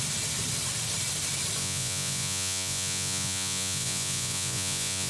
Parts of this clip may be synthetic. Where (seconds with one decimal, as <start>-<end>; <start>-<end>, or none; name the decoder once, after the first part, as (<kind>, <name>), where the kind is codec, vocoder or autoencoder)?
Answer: 1.6-5.1 (vocoder, Vocos)